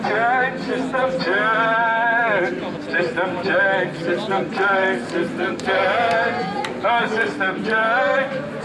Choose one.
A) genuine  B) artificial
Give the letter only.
A